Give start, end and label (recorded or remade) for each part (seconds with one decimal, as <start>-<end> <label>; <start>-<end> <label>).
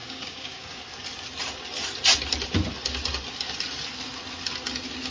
0.0-0.8 remade; 0.8-5.1 recorded